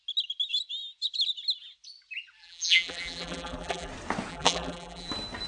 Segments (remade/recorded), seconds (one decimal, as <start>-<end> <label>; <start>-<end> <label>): 0.0-2.4 recorded; 2.4-3.9 remade; 3.9-4.3 recorded; 4.3-5.1 remade; 5.1-5.5 recorded